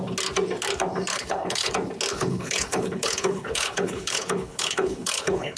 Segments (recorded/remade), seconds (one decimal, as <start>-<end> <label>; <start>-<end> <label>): 0.0-1.1 recorded; 1.1-1.7 remade; 1.7-2.1 recorded; 2.1-5.6 remade